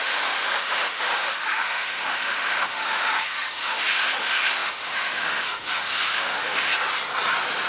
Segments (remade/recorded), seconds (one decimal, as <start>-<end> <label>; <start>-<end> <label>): 0.0-6.7 remade; 6.7-7.7 recorded